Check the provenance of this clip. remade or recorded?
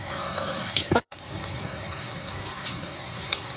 remade